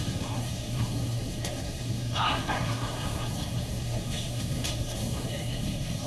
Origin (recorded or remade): remade